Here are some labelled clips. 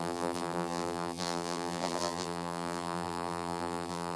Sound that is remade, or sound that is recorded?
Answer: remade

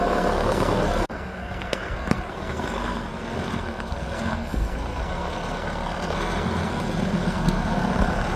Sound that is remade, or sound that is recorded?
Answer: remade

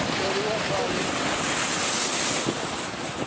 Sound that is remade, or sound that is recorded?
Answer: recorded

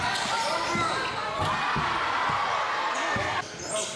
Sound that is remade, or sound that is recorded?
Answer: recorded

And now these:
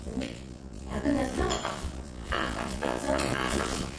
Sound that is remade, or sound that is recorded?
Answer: remade